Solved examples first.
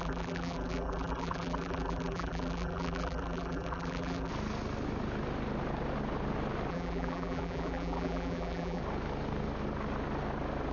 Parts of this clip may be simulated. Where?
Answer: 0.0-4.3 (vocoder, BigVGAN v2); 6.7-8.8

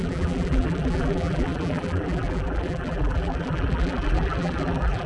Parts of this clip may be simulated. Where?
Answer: 0.0-5.1 (vocoder, BigVGAN v2)

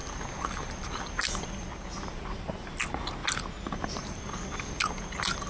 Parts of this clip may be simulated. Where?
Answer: 3.2-4.2 (vocoder, BigVGAN v2)

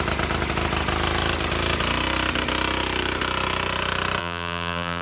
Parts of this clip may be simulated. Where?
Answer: 4.2-5.0 (vocoder, BigVGAN v2)

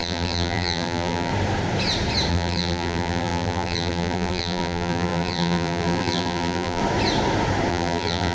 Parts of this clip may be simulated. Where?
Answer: 0.0-1.3 (vocoder, BigVGAN v2); 2.3-6.8; 7.7-8.3

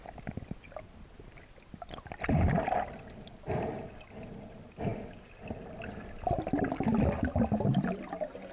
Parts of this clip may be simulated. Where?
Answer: 4.9-6.0 (vocoder, BigVGAN v2)

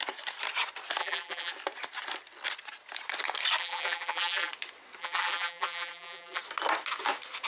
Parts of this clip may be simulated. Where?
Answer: 1.0-1.5 (vocoder, BigVGAN v2); 3.6-4.5; 5.0-6.4

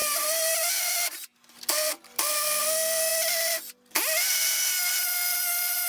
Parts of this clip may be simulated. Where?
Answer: 0.0-1.2 (vocoder, BigVGAN v2)